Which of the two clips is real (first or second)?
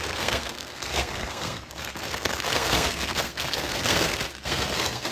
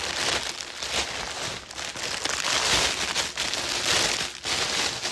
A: second